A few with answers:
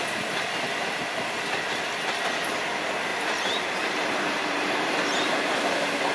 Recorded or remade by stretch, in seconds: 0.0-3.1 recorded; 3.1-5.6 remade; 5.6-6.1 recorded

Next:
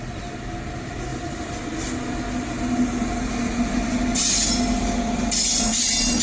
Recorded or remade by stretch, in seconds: 0.0-1.1 recorded; 1.1-1.6 remade; 1.6-6.2 recorded

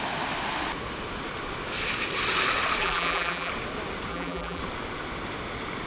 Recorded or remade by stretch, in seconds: 0.0-2.8 recorded; 2.8-3.5 remade; 3.5-4.1 recorded; 4.1-4.6 remade; 4.6-5.9 recorded